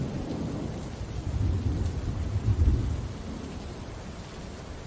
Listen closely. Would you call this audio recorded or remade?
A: recorded